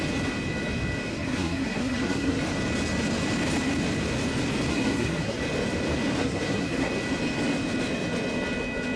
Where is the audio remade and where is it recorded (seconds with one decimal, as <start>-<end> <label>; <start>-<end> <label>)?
0.0-1.1 recorded; 1.1-2.4 remade; 2.4-4.7 recorded; 4.7-5.4 remade; 5.4-6.2 recorded; 6.2-6.9 remade; 6.9-9.0 recorded